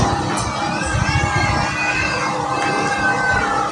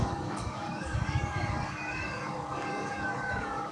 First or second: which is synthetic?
second